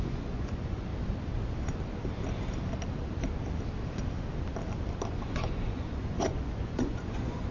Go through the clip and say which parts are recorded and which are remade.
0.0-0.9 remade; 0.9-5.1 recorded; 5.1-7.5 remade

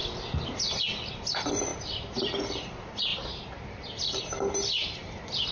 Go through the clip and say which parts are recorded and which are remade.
0.0-1.7 recorded; 1.7-2.3 remade; 2.3-3.1 recorded; 3.1-4.3 remade; 4.3-4.8 recorded; 4.8-5.5 remade

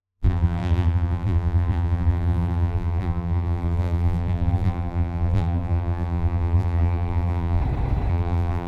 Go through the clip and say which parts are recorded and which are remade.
0.0-7.6 remade; 7.6-8.1 recorded; 8.1-8.7 remade

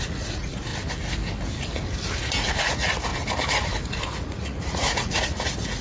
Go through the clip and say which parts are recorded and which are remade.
0.0-0.7 remade; 0.7-2.4 recorded; 2.4-3.1 remade; 3.1-3.9 recorded; 3.9-5.8 remade

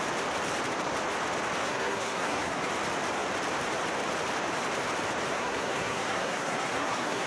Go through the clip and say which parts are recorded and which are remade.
0.0-1.6 recorded; 1.6-2.7 remade; 2.7-5.3 recorded; 5.3-7.3 remade